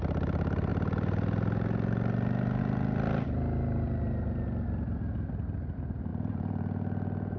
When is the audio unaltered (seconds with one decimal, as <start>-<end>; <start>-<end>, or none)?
0.0-7.4

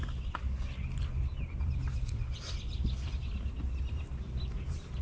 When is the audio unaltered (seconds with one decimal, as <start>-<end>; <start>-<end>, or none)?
0.0-1.9; 2.5-5.0

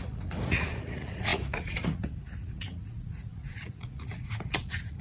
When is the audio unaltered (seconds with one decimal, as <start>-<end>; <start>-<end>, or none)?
none

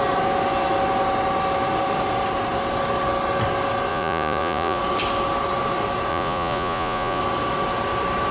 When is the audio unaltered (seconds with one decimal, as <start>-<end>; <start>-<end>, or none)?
0.0-3.9; 4.8-6.1; 7.2-8.3

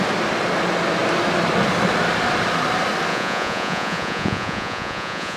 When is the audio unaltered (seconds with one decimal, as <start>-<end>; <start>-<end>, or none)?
0.0-3.1

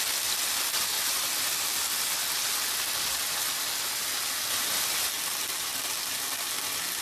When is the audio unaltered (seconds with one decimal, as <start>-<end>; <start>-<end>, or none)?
0.0-7.0

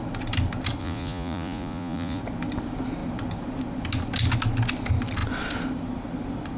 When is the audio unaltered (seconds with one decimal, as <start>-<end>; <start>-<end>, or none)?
0.0-0.8; 2.2-6.6